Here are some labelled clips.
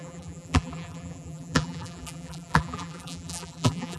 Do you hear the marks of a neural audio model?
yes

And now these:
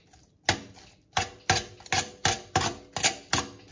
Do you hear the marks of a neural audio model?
no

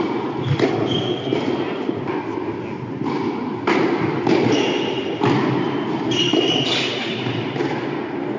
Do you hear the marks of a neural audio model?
no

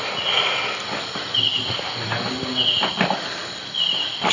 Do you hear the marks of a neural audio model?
no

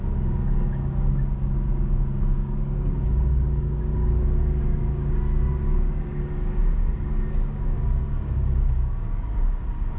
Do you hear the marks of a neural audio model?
yes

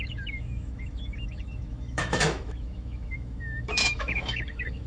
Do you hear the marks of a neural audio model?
yes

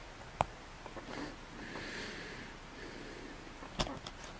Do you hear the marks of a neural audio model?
no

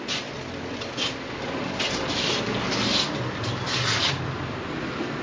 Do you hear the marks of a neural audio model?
no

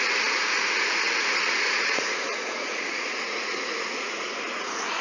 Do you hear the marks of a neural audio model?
yes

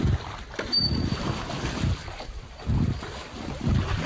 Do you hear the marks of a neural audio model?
no